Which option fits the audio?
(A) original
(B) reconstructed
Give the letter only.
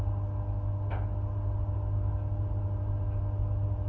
A